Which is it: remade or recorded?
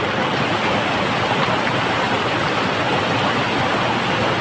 recorded